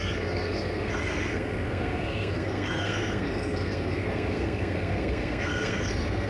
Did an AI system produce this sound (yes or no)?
yes